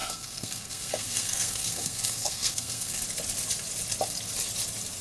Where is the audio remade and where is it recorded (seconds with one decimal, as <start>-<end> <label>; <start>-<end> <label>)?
0.0-3.0 remade; 3.0-5.0 recorded